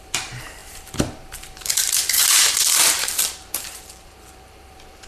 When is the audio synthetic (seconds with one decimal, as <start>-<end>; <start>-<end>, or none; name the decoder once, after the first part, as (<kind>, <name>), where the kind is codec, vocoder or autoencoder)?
0.0-5.1 (vocoder, BigVGAN v2)